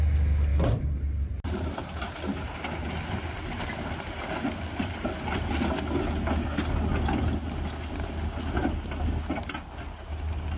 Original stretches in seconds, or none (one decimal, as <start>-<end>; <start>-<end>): 0.0-10.6